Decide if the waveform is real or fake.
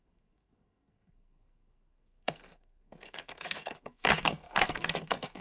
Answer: fake